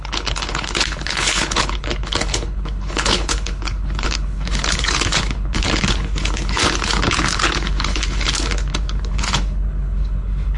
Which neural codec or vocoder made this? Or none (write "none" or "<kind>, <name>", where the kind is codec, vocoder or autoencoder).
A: codec, HILCodec